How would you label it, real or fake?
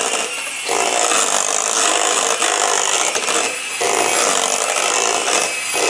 real